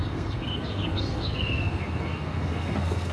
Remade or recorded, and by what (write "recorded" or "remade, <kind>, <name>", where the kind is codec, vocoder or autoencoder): remade, codec, SNAC